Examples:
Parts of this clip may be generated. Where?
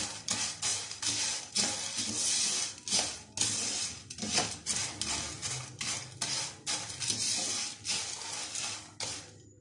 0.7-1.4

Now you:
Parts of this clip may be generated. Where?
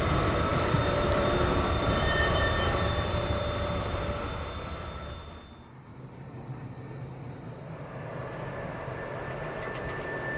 0.5-4.0; 5.9-6.7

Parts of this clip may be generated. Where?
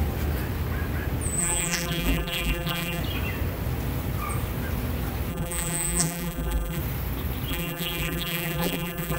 1.4-3.0; 5.3-6.8; 7.5-9.2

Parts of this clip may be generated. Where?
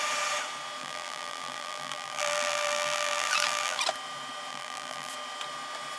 0.8-3.8; 4.5-5.1